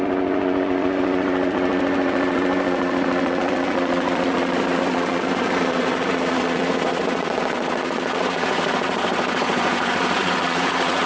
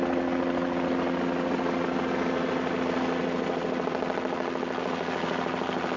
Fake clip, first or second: first